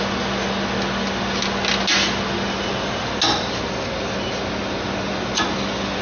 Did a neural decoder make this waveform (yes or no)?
no